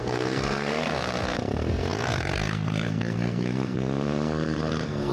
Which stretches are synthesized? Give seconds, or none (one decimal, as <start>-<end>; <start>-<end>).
0.0-5.1